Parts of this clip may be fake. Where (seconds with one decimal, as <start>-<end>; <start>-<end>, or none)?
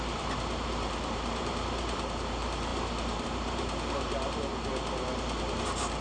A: 0.0-4.7; 5.4-6.0